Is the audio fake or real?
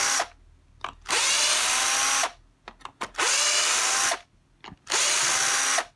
real